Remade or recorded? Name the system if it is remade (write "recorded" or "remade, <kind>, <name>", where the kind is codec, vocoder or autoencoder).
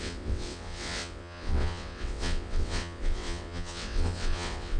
remade, vocoder, WaveNeXt